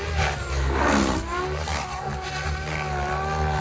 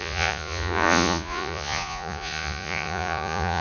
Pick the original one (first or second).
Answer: first